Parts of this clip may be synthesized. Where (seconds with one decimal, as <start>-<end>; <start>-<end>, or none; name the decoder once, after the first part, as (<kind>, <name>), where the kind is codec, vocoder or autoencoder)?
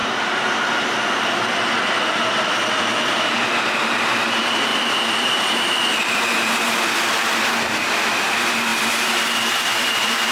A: 2.4-8.7 (vocoder, BigVGAN v2); 9.6-10.3